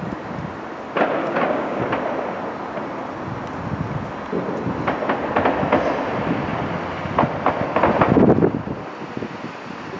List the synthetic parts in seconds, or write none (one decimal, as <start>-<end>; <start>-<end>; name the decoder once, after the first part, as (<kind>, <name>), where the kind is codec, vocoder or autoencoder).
1.2-1.8 (codec, DAC)